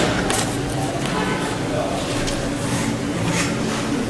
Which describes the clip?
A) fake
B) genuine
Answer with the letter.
B